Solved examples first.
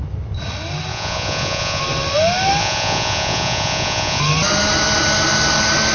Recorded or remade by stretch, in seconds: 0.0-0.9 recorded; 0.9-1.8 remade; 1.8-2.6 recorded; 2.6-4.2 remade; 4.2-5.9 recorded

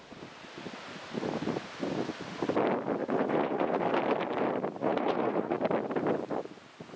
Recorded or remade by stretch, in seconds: 0.0-3.0 recorded; 3.0-3.8 remade; 3.8-4.8 recorded; 4.8-5.6 remade; 5.6-7.0 recorded

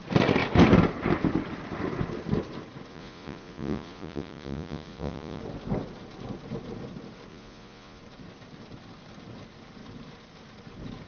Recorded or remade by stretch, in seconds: 0.0-2.9 recorded; 2.9-5.4 remade; 5.4-7.3 recorded; 7.3-8.0 remade; 8.0-11.1 recorded